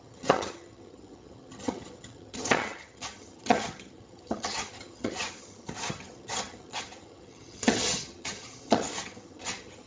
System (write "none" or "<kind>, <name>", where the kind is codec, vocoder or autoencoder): vocoder, HiFi-GAN